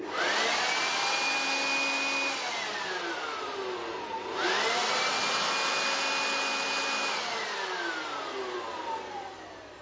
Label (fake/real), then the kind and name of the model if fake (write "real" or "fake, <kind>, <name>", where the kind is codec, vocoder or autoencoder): real